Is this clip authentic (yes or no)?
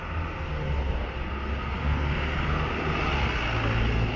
yes